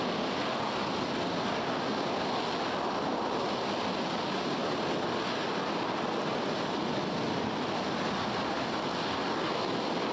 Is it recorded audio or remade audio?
recorded